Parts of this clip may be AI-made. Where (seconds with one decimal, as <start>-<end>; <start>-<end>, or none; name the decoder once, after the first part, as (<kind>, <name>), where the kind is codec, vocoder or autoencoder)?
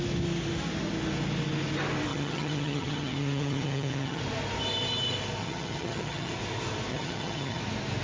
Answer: 2.1-4.2 (vocoder, HiFi-GAN); 5.4-6.3; 6.9-7.6